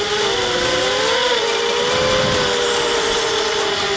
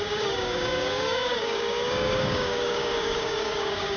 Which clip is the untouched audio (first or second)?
first